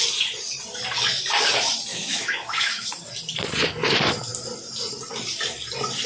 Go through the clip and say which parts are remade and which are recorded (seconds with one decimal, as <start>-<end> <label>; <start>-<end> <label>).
0.0-1.9 recorded; 1.9-2.9 remade; 2.9-6.1 recorded